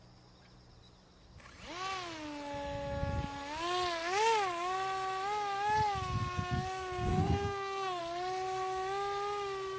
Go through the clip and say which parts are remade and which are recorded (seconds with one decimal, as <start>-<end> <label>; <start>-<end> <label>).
0.0-7.1 recorded; 7.1-8.0 remade; 8.0-9.8 recorded